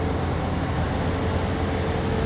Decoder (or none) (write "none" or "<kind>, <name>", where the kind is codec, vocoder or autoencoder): none